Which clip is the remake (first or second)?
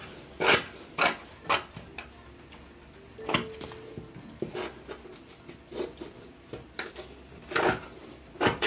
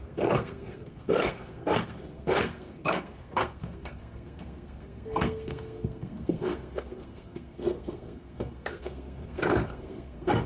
second